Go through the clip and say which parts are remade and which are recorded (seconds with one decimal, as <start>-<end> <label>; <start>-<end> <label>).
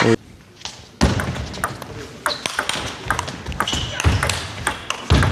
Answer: 0.0-5.3 recorded